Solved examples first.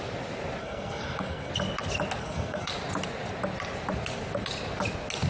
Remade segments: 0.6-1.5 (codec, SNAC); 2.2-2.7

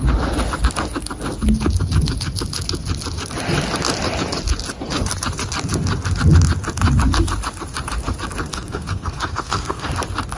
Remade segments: 8.5-9.9 (codec, SNAC)